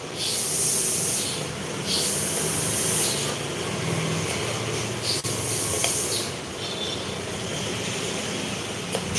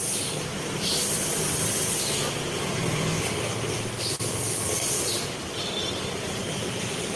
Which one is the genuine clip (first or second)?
first